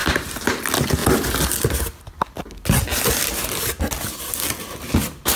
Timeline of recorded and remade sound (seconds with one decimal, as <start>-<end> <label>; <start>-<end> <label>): 0.0-0.5 remade; 0.5-5.4 recorded